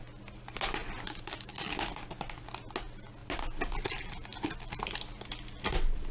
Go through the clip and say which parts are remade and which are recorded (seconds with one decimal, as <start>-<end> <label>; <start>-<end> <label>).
0.0-6.1 recorded

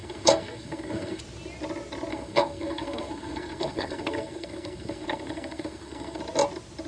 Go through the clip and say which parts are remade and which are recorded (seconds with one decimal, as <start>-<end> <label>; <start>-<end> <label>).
0.0-1.2 remade; 1.2-2.1 recorded; 2.1-6.2 remade; 6.2-6.9 recorded

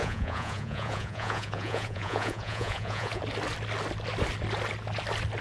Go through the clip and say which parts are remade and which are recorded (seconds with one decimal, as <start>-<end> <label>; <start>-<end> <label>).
0.0-3.2 remade; 3.2-5.4 recorded

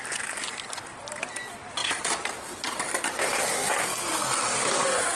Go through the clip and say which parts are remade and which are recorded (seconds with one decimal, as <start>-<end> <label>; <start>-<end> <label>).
0.0-5.2 recorded